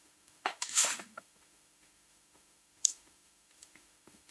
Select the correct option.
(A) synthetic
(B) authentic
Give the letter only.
A